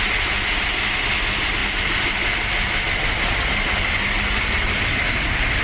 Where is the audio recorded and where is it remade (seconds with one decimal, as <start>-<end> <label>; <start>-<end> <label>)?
0.0-5.6 recorded